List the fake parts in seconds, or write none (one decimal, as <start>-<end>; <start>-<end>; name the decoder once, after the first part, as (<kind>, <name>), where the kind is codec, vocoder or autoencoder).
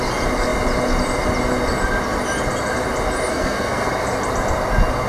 3.3-3.9 (codec, SNAC)